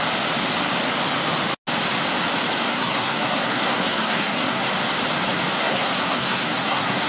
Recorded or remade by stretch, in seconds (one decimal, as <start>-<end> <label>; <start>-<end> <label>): 0.0-2.6 recorded; 2.6-4.7 remade; 4.7-5.6 recorded; 5.6-7.1 remade